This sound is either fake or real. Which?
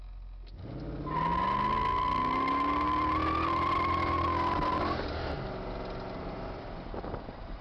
real